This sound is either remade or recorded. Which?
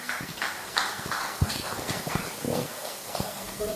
remade